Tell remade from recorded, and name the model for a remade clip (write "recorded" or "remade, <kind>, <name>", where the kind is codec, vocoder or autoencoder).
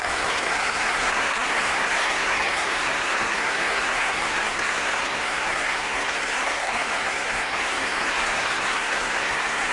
remade, codec, SNAC